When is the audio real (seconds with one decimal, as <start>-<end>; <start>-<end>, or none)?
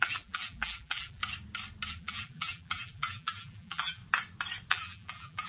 1.2-1.9; 4.0-4.7